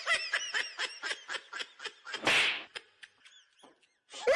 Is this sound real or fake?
real